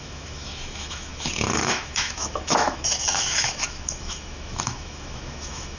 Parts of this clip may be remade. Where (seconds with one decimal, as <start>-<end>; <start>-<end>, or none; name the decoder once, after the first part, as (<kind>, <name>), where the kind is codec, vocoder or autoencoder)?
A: 0.0-5.8 (autoencoder, DAC-VAE)